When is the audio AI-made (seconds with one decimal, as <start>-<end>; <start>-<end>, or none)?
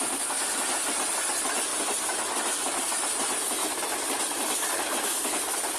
none